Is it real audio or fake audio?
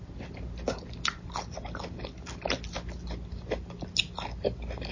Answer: real